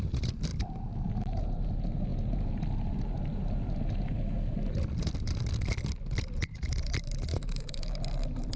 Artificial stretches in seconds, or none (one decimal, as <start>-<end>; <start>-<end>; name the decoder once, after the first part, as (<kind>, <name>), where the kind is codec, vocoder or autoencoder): 7.3-8.0 (autoencoder, DAC-VAE)